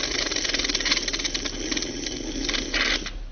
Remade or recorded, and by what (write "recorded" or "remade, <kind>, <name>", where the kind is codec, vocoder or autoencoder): recorded